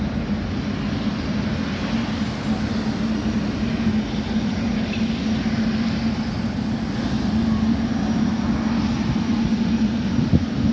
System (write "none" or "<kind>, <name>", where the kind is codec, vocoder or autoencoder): none